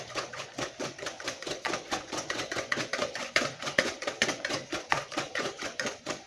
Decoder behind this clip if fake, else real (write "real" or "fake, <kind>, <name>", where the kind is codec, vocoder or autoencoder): fake, vocoder, Vocos